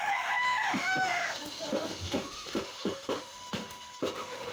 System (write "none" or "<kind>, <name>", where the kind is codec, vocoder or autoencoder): autoencoder, DAC-VAE